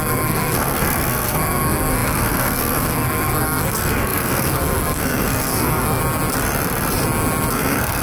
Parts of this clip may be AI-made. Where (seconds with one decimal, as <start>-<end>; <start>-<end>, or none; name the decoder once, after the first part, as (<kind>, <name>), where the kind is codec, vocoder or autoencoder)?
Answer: 0.0-6.0 (codec, SNAC); 7.5-8.0